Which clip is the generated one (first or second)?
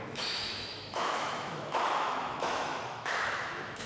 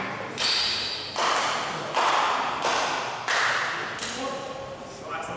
first